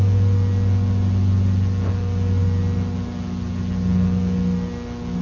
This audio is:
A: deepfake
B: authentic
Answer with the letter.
B